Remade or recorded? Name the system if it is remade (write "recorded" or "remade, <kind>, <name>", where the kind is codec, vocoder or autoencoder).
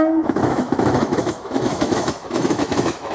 remade, autoencoder, DAC-VAE